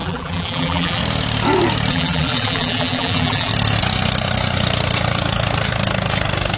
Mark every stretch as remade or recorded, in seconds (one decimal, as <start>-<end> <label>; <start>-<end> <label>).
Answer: 0.0-1.0 remade; 1.0-1.9 recorded; 1.9-3.5 remade; 3.5-6.6 recorded